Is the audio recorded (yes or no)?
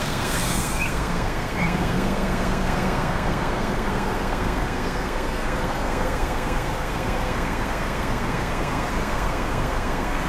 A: no